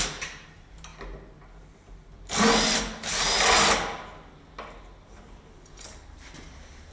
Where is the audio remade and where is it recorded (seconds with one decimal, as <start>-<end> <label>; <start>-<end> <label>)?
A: 0.0-0.9 remade; 0.9-5.0 recorded; 5.0-6.9 remade